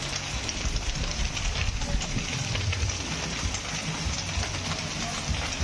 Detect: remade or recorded recorded